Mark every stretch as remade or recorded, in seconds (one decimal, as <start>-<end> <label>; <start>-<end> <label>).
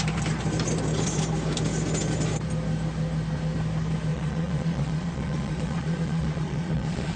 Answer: 0.0-4.1 recorded; 4.1-7.2 remade